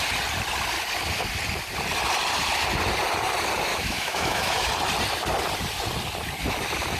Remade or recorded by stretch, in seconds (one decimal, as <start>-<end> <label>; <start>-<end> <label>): 0.0-3.7 recorded; 3.7-4.7 remade; 4.7-7.0 recorded